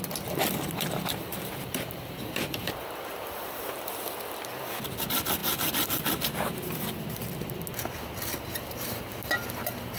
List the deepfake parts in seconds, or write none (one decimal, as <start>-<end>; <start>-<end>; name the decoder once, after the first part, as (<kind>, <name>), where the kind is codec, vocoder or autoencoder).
1.3-3.6 (vocoder, BigVGAN v2); 8.3-9.2